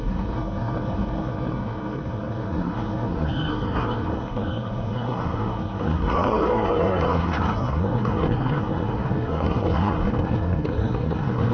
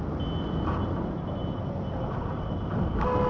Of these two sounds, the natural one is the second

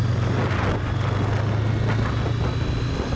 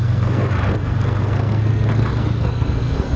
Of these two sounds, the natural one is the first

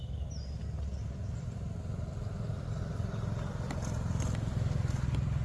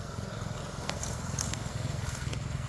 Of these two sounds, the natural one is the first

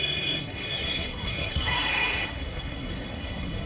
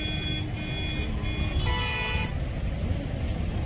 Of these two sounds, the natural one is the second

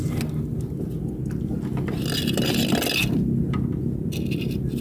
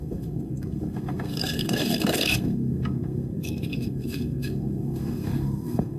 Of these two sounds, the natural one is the first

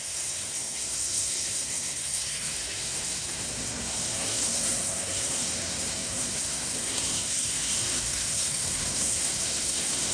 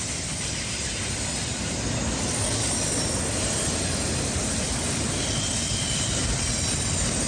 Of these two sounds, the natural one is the second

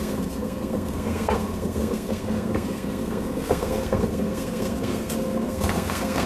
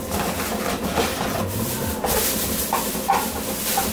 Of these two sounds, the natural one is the second